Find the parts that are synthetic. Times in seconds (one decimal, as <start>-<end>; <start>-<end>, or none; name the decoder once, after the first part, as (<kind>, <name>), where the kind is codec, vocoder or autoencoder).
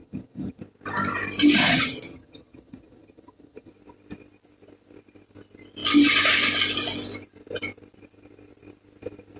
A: 0.0-0.6 (vocoder, HiFi-GAN); 1.6-3.7